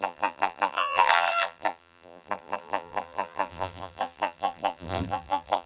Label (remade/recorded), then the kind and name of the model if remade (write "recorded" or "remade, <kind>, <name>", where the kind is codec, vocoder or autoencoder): remade, vocoder, BigVGAN v2